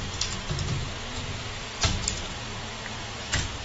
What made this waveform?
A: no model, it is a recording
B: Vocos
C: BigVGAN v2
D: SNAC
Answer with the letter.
C